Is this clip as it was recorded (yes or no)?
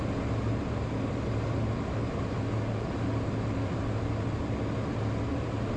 yes